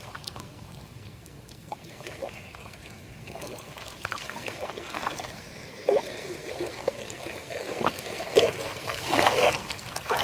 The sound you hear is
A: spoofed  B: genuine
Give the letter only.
A